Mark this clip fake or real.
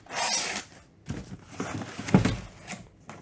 real